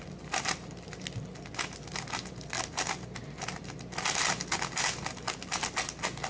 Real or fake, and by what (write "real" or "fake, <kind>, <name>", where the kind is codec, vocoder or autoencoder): real